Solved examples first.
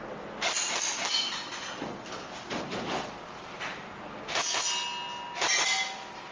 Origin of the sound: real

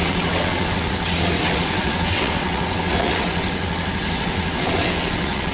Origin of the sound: fake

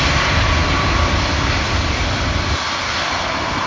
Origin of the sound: real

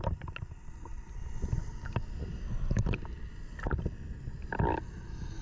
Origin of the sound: real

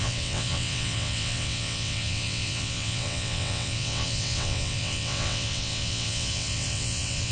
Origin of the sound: fake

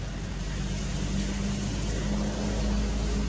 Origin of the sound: real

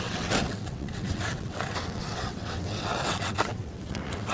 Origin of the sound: fake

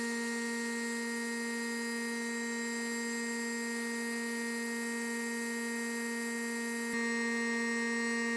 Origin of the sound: real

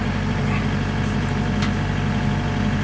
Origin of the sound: real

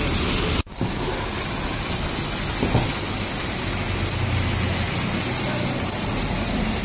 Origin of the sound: real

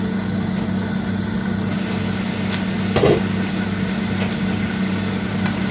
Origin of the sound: real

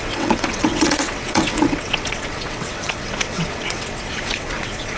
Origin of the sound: fake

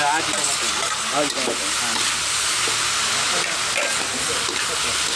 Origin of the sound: real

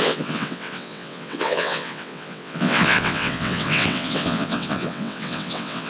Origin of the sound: fake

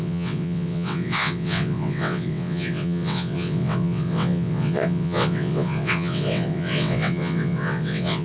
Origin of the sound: fake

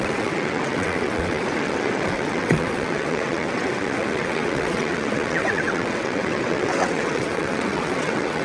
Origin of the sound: fake